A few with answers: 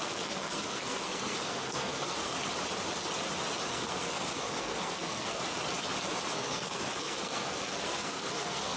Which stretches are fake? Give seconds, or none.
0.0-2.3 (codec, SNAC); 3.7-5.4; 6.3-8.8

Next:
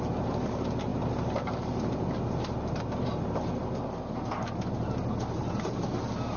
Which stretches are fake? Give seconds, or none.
none

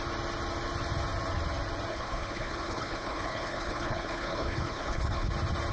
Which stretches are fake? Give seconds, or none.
1.9-5.3 (codec, HILCodec)

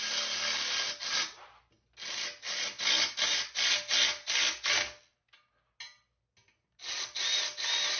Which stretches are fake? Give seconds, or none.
none

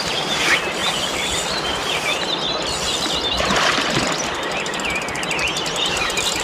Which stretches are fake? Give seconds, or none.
0.8-4.6 (vocoder, BigVGAN v2)

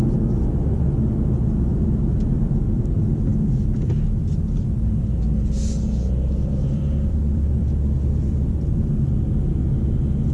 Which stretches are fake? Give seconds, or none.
1.7-3.0 (vocoder, BigVGAN v2); 6.4-7.6

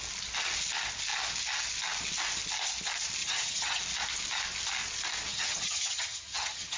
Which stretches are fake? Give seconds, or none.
3.2-3.8 (vocoder, HiFi-GAN); 5.3-6.8

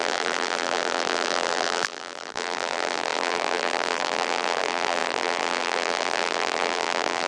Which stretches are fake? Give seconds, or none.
0.0-7.3 (vocoder, BigVGAN v2)